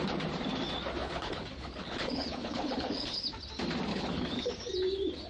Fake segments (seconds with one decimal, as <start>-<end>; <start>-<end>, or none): 1.0-3.2; 3.9-4.5

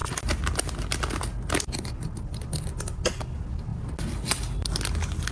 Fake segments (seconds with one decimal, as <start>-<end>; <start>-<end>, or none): none

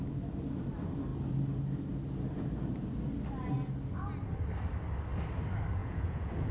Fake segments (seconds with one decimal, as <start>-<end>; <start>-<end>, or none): 5.8-6.5

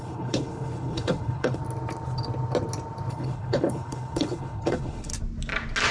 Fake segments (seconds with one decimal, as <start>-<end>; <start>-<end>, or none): 0.0-1.6; 3.1-5.1